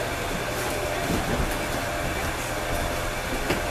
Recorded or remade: recorded